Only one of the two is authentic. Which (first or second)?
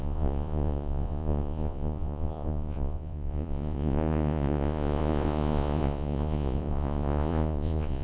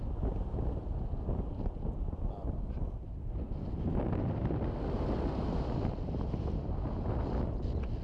second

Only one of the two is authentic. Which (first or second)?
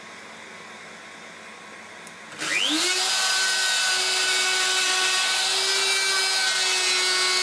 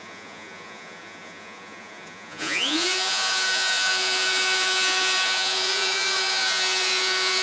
first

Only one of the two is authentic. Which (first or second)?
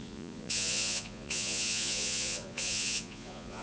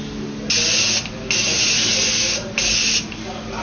second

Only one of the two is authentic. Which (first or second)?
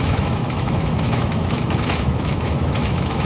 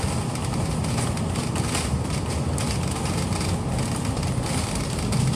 second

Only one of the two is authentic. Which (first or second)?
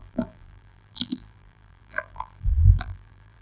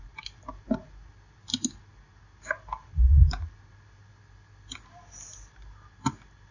second